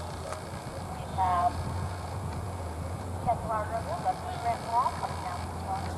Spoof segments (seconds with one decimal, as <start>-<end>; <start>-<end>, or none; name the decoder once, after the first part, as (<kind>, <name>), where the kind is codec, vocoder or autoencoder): 1.1-3.2 (vocoder, Vocos)